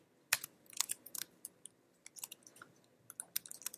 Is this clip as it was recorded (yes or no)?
yes